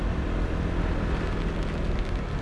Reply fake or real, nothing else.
real